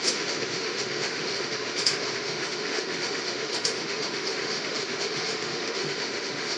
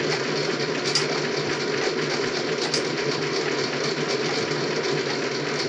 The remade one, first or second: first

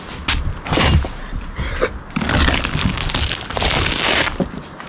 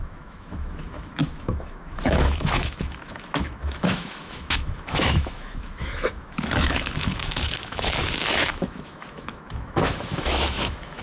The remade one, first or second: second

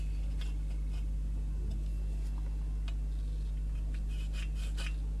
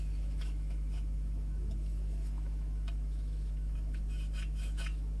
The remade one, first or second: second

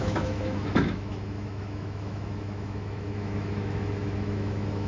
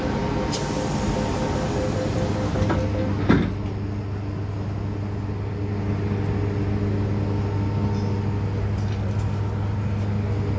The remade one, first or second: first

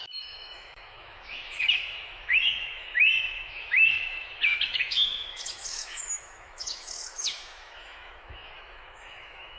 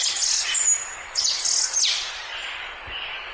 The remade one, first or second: first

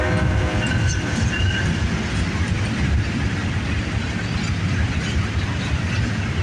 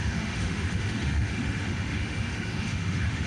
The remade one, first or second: second